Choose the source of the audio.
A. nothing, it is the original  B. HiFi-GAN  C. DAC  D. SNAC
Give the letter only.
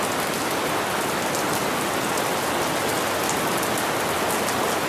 A